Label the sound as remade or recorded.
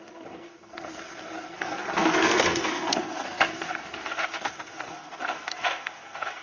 remade